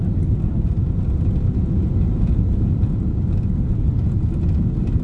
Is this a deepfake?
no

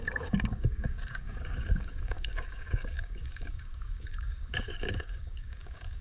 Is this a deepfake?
yes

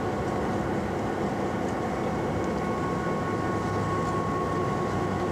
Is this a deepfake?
no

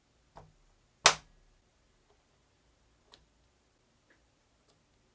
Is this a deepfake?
no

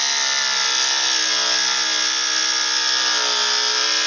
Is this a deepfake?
no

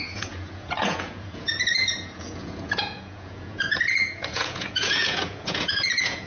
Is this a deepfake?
yes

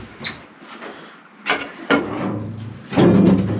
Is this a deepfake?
no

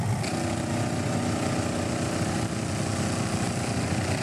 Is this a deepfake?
no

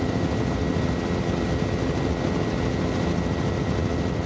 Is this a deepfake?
no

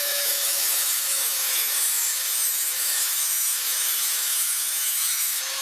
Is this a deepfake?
yes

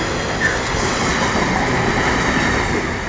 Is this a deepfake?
no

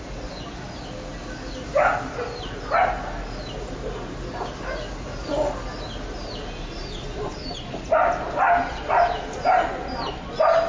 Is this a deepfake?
no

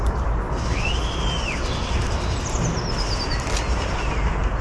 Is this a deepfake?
no